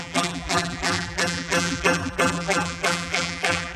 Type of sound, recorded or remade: remade